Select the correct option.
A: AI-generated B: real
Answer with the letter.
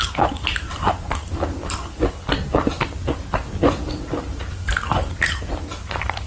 B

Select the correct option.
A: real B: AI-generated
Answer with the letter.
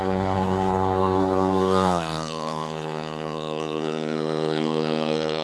B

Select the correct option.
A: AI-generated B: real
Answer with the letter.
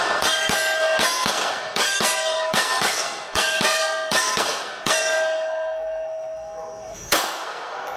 A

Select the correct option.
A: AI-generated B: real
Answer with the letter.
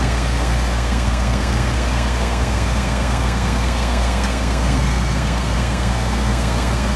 A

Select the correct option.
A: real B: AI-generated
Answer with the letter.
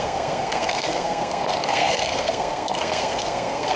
B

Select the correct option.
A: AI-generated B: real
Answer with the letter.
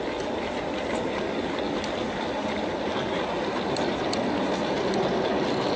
B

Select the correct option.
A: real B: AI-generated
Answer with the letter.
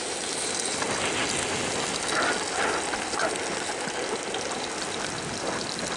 A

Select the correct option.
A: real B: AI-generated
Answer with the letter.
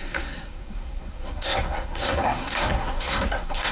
B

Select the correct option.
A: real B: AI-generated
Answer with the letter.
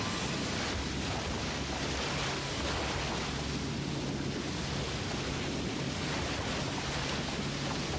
A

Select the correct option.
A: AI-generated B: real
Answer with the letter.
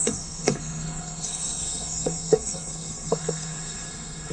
A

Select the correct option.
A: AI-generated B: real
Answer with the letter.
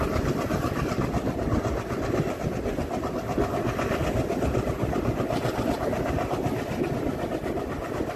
B